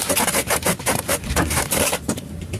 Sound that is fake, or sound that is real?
fake